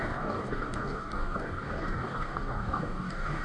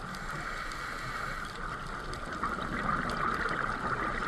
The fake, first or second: first